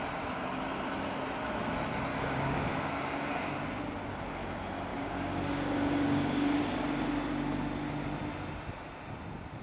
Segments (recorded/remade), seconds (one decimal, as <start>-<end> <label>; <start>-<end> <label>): 0.0-2.1 recorded; 2.1-2.9 remade; 2.9-4.9 recorded; 4.9-6.6 remade; 6.6-9.6 recorded